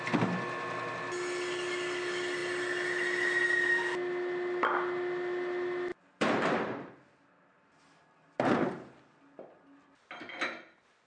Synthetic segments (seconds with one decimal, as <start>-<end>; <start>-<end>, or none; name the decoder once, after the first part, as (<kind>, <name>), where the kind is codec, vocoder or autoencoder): 5.9-6.9 (vocoder, BigVGAN v2)